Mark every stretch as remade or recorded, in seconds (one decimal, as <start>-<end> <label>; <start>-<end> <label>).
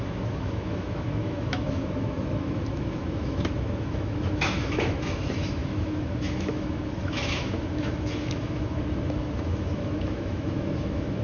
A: 0.0-11.2 remade